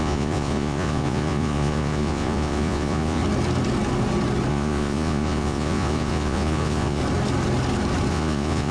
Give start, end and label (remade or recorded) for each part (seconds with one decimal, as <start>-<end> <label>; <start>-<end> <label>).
0.0-3.2 remade; 3.2-4.5 recorded; 4.5-7.0 remade; 7.0-8.1 recorded; 8.1-8.7 remade